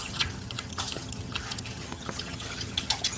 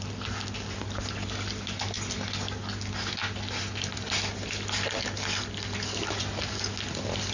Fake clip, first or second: first